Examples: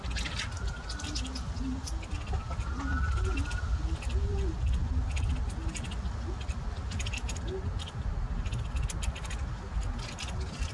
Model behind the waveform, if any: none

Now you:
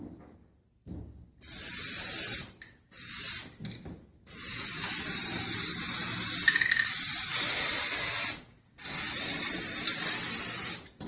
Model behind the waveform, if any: none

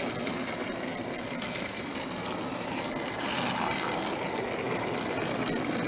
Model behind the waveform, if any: none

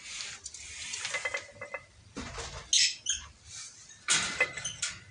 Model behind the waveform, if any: none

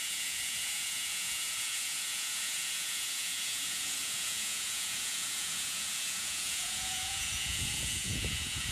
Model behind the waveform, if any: vocoder, Vocos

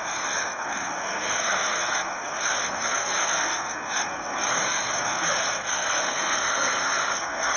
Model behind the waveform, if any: codec, SNAC